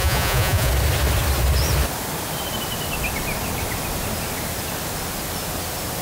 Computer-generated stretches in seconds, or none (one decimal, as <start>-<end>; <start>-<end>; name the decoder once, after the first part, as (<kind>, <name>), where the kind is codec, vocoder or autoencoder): 0.0-0.7 (vocoder, Vocos)